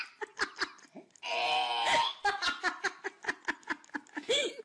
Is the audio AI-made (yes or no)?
no